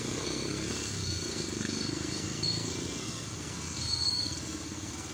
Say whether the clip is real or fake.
fake